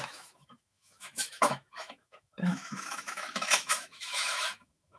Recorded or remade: remade